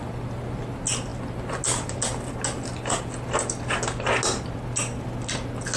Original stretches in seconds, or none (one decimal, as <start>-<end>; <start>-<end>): 0.0-5.8